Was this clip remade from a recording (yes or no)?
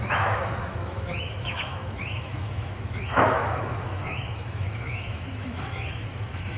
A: yes